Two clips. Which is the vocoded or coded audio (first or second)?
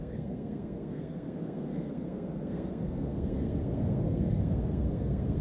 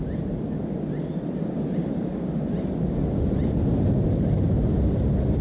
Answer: first